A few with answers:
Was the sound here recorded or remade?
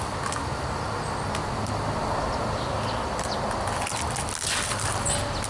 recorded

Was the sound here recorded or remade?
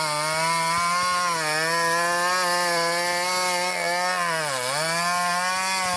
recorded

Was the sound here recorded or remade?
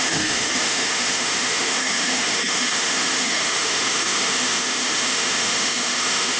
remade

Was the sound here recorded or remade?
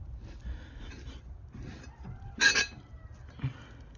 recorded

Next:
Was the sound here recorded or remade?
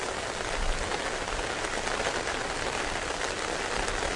recorded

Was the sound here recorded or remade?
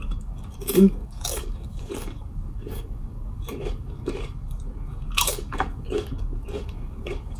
remade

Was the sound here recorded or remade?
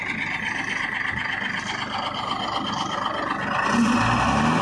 recorded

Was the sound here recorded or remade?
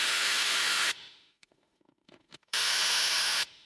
remade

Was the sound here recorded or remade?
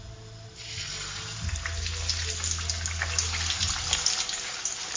recorded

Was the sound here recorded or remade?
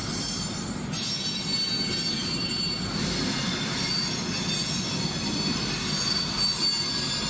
recorded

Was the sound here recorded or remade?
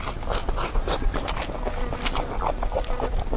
recorded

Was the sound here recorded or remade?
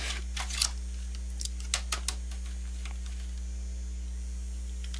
recorded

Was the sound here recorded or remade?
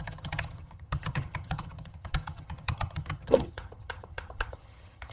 remade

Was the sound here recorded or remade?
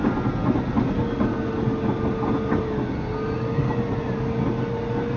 recorded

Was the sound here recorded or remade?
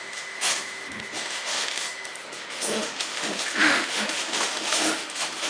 remade